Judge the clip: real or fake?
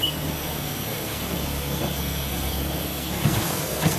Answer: fake